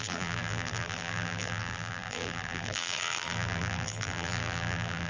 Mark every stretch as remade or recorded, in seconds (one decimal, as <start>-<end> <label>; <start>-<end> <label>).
0.0-5.1 remade